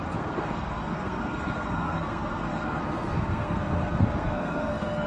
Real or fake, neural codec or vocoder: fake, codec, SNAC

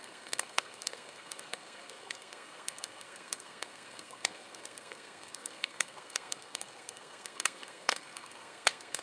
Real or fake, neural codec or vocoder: fake, codec, SNAC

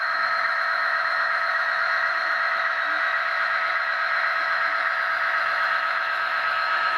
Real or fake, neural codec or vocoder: fake, autoencoder, DAC-VAE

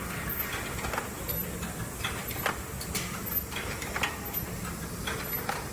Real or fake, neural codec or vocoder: real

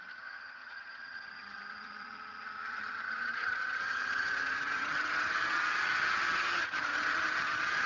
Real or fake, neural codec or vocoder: fake, vocoder, HiFi-GAN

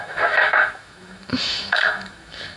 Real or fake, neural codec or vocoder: fake, autoencoder, DAC-VAE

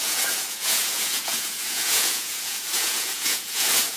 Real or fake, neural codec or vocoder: fake, vocoder, Vocos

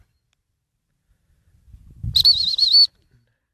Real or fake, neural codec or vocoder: real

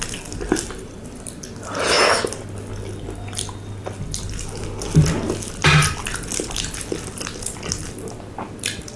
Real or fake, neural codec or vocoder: real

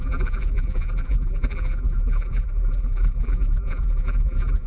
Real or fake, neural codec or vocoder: fake, vocoder, BigVGAN v2